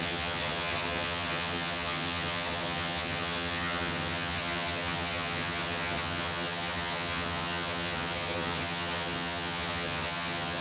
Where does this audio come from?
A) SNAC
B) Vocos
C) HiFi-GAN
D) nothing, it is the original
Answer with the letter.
C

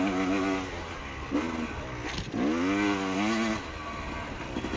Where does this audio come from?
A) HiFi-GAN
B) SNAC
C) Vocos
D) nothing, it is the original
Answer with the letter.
D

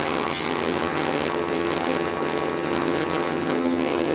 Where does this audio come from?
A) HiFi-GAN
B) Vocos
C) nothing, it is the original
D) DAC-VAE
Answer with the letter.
A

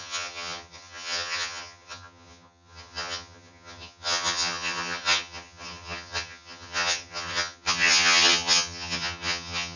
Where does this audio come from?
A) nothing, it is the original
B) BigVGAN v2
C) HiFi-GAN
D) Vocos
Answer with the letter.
C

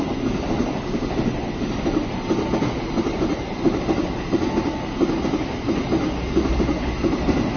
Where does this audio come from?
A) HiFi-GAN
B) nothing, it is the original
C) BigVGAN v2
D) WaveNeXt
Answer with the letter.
B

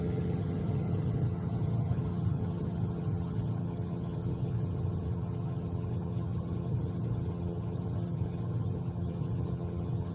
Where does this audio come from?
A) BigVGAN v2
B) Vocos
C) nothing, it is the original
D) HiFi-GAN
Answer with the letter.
D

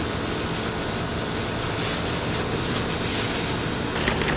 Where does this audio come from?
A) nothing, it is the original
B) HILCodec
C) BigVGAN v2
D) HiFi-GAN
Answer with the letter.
A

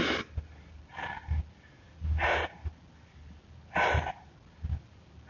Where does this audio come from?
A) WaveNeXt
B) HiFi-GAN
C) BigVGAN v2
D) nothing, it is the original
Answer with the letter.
D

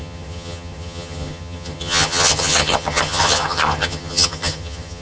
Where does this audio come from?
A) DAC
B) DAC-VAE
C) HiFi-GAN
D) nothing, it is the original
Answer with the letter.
C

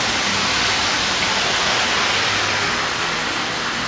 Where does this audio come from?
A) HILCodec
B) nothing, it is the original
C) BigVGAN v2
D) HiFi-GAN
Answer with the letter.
B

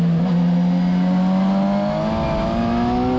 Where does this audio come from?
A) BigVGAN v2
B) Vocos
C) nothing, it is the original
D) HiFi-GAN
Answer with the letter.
C